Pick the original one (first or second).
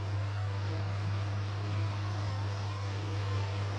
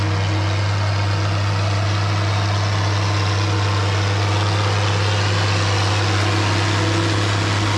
second